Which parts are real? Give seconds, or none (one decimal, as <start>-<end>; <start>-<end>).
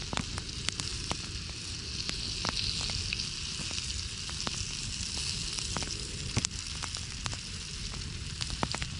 0.0-9.0